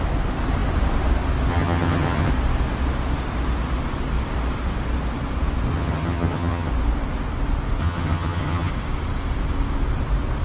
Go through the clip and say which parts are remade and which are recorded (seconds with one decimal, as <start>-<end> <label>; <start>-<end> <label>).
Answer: 0.0-1.5 recorded; 1.5-2.3 remade; 2.3-5.7 recorded; 5.7-6.7 remade; 6.7-7.8 recorded; 7.8-8.7 remade; 8.7-10.4 recorded